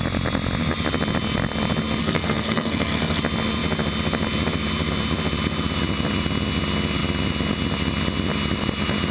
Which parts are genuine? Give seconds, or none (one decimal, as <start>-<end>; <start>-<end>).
0.0-2.0; 3.2-9.1